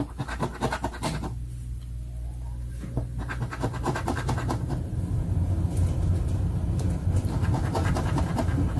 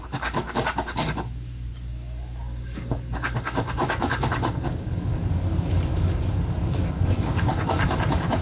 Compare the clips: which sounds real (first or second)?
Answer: first